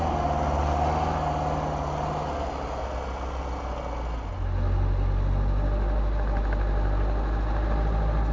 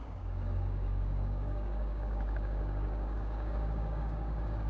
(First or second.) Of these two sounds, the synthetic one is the second